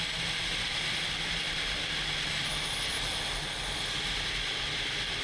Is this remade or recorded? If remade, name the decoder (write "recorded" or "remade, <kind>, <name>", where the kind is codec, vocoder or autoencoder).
recorded